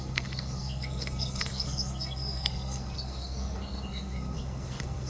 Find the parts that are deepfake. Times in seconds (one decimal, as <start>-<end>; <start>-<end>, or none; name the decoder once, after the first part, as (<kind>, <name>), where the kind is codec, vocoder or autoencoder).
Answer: 0.0-5.1 (codec, SNAC)

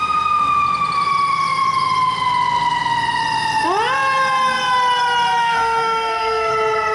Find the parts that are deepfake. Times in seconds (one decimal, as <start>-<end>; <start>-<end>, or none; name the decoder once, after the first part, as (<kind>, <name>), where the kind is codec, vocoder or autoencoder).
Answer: 5.4-6.5 (codec, SNAC)